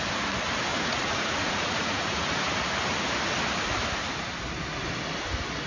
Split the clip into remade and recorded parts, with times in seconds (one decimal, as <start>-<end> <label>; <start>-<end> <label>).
0.0-0.7 recorded; 0.7-2.5 remade; 2.5-5.7 recorded